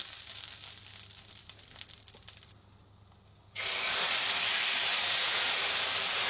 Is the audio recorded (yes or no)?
yes